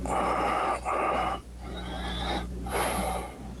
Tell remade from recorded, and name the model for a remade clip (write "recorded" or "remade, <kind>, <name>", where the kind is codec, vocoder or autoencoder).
recorded